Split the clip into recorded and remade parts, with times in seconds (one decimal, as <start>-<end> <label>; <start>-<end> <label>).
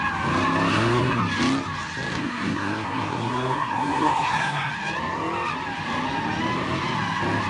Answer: 0.0-0.7 recorded; 0.7-1.2 remade; 1.2-2.1 recorded; 2.1-4.7 remade; 4.7-7.5 recorded